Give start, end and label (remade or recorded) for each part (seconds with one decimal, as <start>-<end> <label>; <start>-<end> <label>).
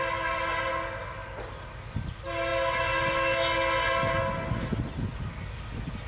0.0-6.1 recorded